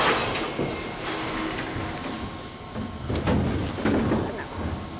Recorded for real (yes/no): yes